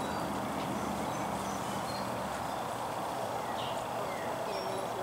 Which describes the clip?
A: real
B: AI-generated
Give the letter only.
A